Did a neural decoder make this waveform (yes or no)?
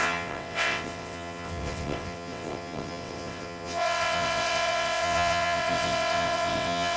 yes